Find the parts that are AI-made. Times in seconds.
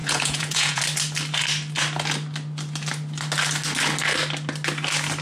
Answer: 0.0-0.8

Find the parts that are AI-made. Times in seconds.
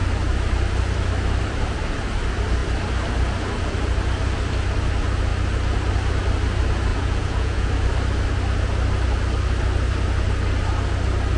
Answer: 6.9-7.7